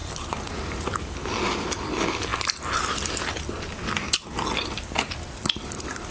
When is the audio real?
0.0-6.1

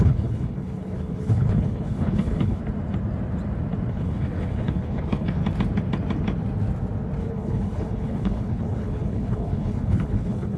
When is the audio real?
2.6-3.9; 5.4-7.2